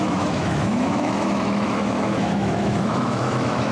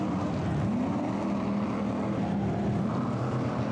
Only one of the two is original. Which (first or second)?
second